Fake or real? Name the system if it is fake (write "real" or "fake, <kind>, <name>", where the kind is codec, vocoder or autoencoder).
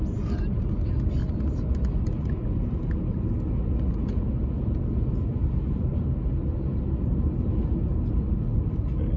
real